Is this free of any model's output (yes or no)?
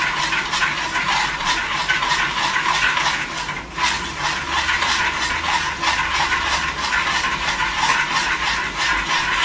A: no